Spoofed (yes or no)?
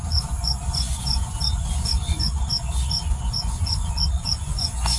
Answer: yes